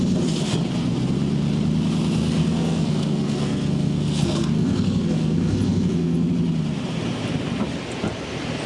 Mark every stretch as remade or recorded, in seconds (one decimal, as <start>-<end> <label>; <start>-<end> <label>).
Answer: 0.0-2.4 recorded; 2.4-6.3 remade; 6.3-8.7 recorded